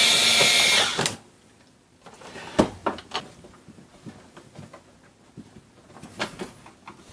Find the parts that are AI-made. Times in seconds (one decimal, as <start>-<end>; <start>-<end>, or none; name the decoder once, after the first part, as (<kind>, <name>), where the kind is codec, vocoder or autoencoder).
none